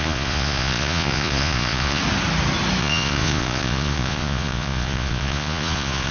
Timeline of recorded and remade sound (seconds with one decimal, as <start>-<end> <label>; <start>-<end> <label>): 0.0-2.0 remade; 2.0-2.8 recorded; 2.8-6.1 remade